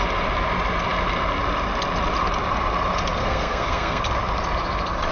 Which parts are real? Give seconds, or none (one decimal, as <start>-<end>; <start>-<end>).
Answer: 0.0-3.2; 4.0-5.1